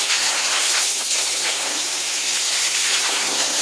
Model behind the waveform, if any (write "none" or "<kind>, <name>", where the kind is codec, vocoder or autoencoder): codec, SNAC